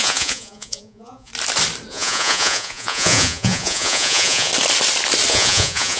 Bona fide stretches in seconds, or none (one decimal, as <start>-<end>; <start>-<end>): 1.3-1.9; 4.5-5.3